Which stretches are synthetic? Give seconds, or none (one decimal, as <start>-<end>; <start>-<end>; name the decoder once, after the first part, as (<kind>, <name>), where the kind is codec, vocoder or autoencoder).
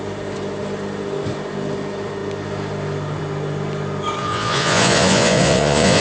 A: 4.2-6.0 (vocoder, Vocos)